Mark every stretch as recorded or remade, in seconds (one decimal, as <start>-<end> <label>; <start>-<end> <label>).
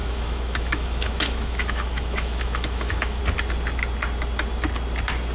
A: 0.0-3.2 remade; 3.2-5.3 recorded